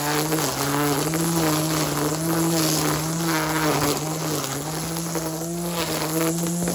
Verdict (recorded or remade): recorded